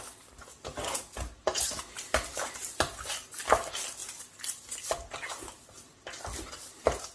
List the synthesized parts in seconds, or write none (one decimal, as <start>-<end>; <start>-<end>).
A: none